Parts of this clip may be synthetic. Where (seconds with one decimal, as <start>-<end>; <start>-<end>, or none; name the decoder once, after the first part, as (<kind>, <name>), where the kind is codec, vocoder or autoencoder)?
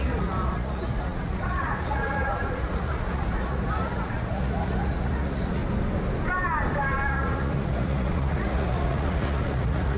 0.0-5.6 (vocoder, Vocos); 7.1-10.0